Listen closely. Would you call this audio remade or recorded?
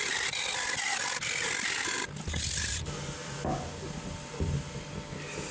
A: recorded